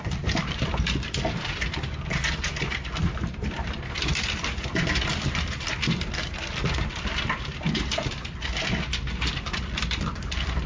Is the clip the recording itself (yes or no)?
no